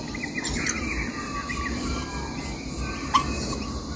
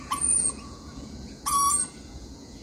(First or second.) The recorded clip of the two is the first